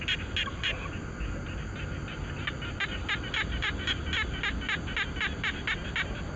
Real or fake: real